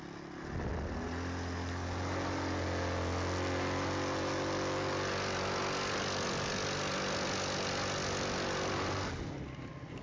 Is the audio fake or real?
real